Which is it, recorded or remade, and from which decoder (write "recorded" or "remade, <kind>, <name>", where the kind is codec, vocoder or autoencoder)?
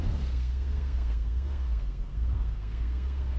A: remade, codec, SNAC